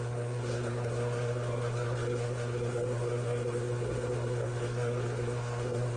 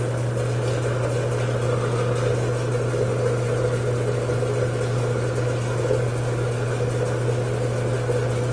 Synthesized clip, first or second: first